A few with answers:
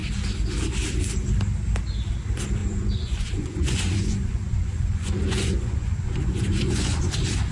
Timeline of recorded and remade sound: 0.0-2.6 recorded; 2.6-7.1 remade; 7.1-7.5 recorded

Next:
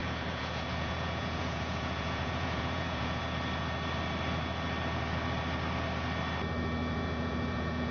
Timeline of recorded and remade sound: 0.0-3.2 remade; 3.2-6.8 recorded; 6.8-7.9 remade

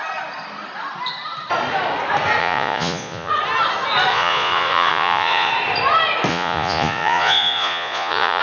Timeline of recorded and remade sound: 0.0-2.4 recorded; 2.4-3.3 remade; 3.3-4.1 recorded; 4.1-5.5 remade; 5.5-6.3 recorded; 6.3-8.4 remade

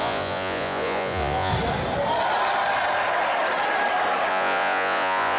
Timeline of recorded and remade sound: 0.0-1.5 remade; 1.5-4.3 recorded; 4.3-5.4 remade

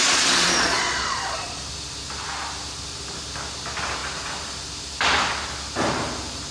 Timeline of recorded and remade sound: 0.0-1.6 remade; 1.6-6.5 recorded